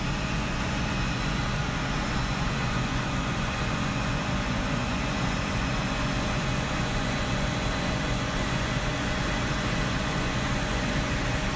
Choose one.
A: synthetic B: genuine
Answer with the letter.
A